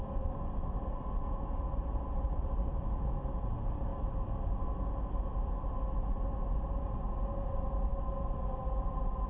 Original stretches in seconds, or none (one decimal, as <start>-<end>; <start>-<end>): 0.0-9.3